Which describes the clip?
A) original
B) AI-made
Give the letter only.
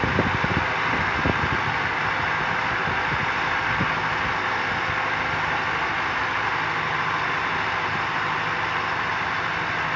A